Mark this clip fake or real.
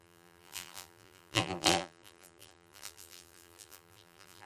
fake